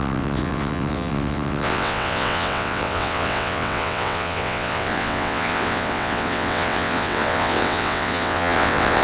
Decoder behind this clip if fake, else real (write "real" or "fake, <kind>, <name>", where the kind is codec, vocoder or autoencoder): fake, vocoder, WaveNeXt